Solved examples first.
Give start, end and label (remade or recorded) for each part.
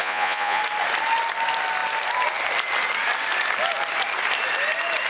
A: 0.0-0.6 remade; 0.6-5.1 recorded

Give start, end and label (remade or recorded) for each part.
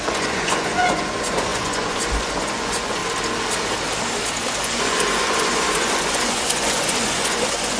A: 0.0-3.0 remade; 3.0-4.6 recorded; 4.6-7.8 remade